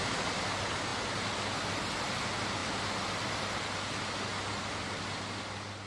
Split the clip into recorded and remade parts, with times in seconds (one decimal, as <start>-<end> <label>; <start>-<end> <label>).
0.0-5.9 recorded

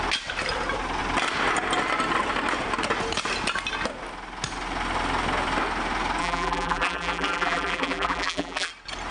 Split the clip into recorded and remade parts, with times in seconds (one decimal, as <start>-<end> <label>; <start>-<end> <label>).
0.0-6.2 recorded; 6.2-8.7 remade; 8.7-9.1 recorded

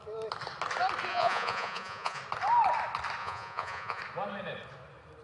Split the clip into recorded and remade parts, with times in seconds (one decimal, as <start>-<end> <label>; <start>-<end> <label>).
0.0-1.1 recorded; 1.1-2.2 remade; 2.2-3.2 recorded; 3.2-4.0 remade; 4.0-5.2 recorded

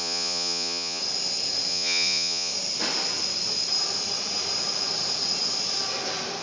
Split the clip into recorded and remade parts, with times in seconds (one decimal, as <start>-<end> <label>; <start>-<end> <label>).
0.0-1.0 remade; 1.0-1.7 recorded; 1.7-2.5 remade; 2.5-6.4 recorded